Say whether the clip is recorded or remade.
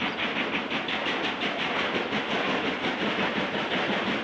recorded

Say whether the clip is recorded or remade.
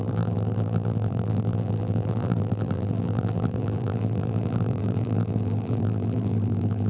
remade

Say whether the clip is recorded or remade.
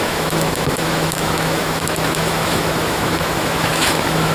remade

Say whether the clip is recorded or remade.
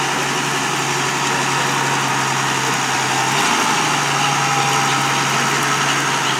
recorded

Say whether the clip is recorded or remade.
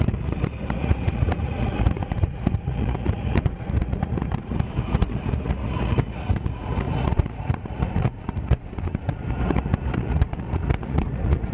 remade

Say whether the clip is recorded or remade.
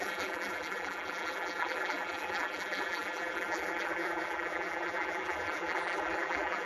remade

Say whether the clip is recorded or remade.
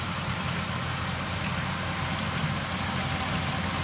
recorded